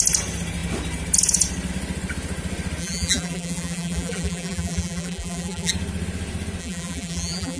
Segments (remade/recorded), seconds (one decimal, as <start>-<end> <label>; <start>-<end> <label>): 0.0-2.8 recorded; 2.8-5.7 remade; 5.7-6.6 recorded; 6.6-7.6 remade